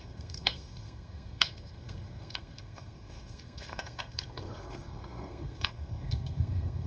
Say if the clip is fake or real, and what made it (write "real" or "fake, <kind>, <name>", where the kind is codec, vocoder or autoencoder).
fake, codec, SNAC